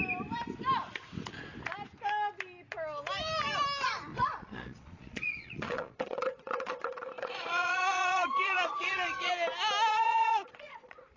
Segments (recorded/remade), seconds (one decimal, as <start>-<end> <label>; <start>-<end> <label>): 0.0-4.1 recorded; 4.1-9.3 remade; 9.3-9.9 recorded; 9.9-11.2 remade